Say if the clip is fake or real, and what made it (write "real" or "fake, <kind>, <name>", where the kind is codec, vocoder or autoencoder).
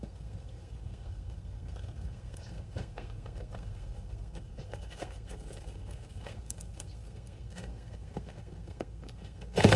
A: fake, codec, SNAC